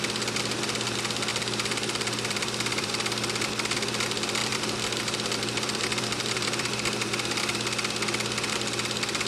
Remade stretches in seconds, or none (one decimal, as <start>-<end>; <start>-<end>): 1.3-2.9; 4.4-6.7